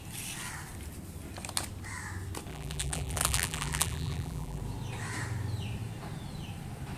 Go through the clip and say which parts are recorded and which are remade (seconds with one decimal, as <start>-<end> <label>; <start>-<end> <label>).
0.0-2.5 recorded; 2.5-4.6 remade; 4.6-7.0 recorded